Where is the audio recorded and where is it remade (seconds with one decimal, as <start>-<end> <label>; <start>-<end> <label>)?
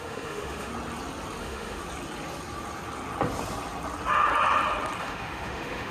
0.0-0.7 remade; 0.7-1.4 recorded; 1.4-1.8 remade; 1.8-5.0 recorded; 5.0-5.9 remade